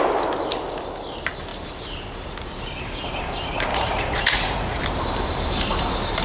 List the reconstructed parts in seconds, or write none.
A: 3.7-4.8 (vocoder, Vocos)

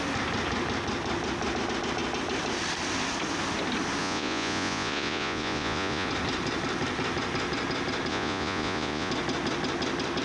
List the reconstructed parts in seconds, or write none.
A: 4.0-6.1 (vocoder, Vocos); 8.1-9.1

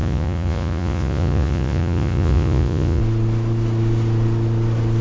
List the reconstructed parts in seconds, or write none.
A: 0.0-3.0 (vocoder, Vocos)

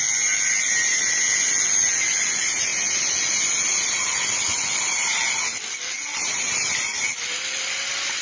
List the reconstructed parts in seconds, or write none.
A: none

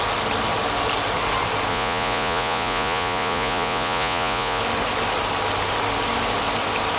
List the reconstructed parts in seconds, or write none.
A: 1.7-4.6 (vocoder, Vocos)

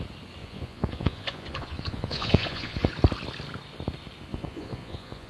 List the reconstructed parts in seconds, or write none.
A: 0.4-2.9 (vocoder, Vocos); 4.3-5.3

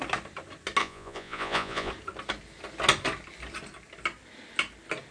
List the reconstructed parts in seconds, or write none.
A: 0.8-1.9 (vocoder, Vocos)